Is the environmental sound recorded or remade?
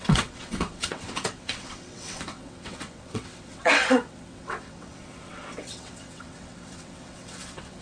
remade